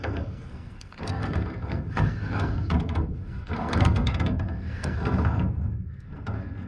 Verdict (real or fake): fake